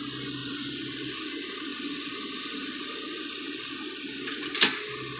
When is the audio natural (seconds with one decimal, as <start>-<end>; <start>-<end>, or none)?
0.0-0.4; 1.0-1.7; 2.9-5.2

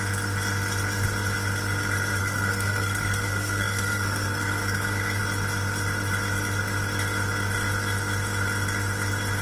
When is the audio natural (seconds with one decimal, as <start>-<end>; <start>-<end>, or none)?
0.0-2.2; 5.2-9.4

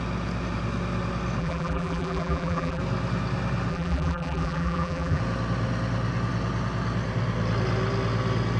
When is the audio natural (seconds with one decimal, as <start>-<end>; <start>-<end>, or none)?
0.0-1.4; 2.8-3.7; 5.2-8.6

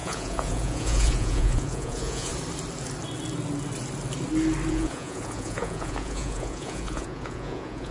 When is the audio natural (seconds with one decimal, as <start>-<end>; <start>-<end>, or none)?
2.3-4.7

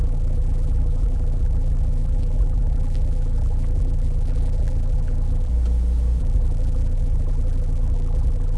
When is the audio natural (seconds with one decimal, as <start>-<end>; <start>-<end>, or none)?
5.5-6.2

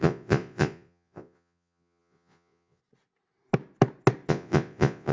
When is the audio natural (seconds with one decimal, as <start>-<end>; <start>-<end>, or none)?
2.8-4.3